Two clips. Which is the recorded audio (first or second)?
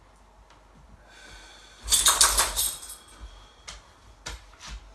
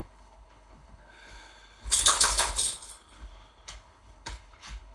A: first